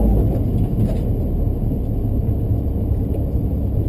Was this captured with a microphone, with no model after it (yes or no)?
yes